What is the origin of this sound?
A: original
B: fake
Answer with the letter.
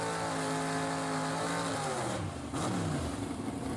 A